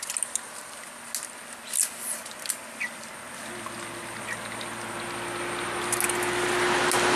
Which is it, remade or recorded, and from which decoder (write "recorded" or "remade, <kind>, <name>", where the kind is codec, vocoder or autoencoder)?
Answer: recorded